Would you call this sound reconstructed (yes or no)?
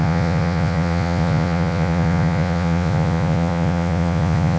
yes